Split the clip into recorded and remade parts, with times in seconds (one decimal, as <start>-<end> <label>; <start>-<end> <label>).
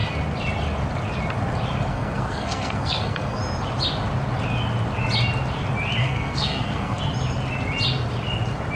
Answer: 0.0-1.9 recorded; 1.9-3.4 remade; 3.4-6.0 recorded; 6.0-7.0 remade; 7.0-8.8 recorded